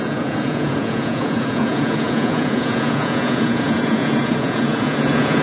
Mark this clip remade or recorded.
remade